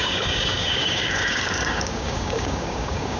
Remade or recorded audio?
remade